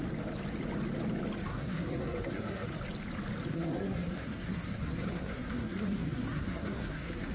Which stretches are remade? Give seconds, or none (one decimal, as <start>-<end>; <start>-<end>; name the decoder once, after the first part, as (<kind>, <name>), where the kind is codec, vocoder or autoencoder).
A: 1.5-2.7 (codec, SNAC); 3.5-7.3